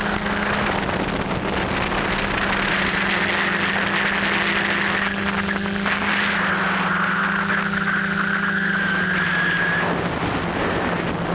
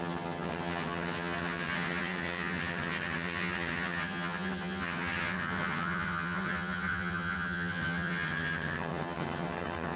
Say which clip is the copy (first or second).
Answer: second